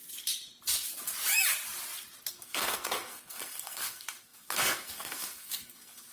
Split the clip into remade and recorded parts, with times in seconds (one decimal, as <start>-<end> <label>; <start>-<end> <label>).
0.0-2.3 recorded; 2.3-6.1 remade